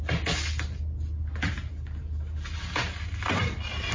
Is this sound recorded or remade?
recorded